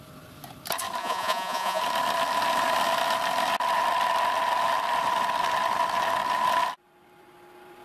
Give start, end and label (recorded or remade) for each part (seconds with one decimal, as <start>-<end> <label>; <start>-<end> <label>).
0.0-1.0 recorded; 1.0-1.8 remade; 1.8-7.8 recorded